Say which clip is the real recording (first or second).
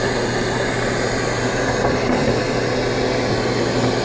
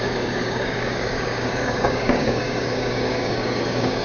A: first